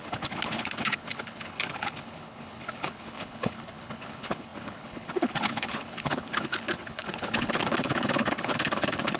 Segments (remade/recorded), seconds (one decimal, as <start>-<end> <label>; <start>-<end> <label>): 0.0-9.2 remade